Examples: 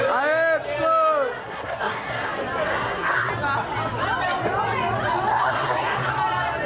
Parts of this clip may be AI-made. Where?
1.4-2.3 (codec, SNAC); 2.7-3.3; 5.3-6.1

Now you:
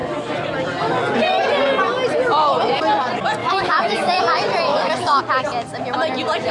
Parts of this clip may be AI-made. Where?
3.4-4.2 (autoencoder, DAC-VAE); 4.7-5.2

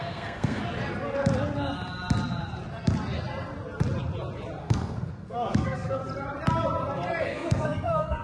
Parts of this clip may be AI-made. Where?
0.0-0.6 (codec, SNAC); 4.6-6.0; 7.2-8.2

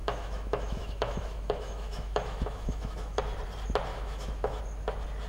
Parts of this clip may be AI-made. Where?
0.0-3.2 (autoencoder, DAC-VAE); 3.9-4.6

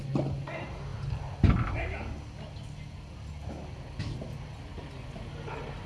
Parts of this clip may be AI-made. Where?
none

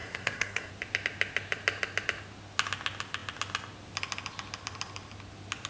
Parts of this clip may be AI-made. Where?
0.0-0.7 (codec, SNAC)